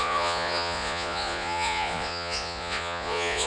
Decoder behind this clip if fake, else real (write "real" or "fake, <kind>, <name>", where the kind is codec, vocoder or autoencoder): fake, vocoder, Vocos